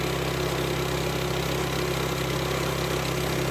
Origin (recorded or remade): recorded